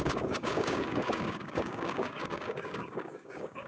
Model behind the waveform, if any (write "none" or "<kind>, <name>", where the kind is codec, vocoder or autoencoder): codec, DAC